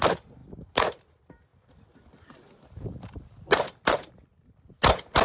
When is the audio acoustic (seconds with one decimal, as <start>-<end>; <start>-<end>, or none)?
none